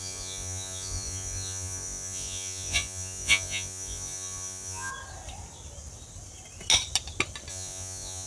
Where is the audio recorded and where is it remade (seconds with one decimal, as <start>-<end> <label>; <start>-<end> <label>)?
0.0-4.9 remade; 4.9-7.5 recorded; 7.5-8.3 remade